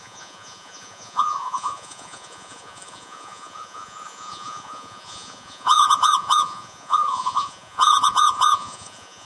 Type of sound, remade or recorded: remade